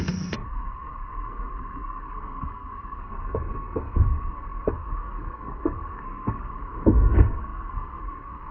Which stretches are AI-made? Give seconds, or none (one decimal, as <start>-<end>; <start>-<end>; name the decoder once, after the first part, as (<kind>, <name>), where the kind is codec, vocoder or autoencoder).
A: 0.0-8.5 (codec, SNAC)